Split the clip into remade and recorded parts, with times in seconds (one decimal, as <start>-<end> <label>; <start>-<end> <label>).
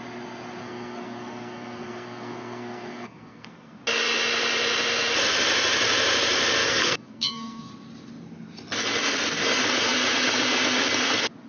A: 0.0-0.6 recorded; 0.6-3.8 remade; 3.8-6.6 recorded; 6.6-7.7 remade; 7.7-11.5 recorded